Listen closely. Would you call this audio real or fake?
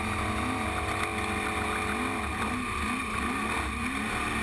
real